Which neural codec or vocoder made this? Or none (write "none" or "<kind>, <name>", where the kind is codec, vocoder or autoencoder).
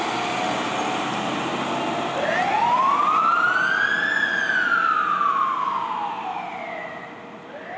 none